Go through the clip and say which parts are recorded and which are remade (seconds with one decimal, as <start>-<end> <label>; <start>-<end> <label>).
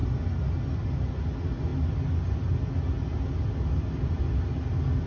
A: 0.0-5.1 recorded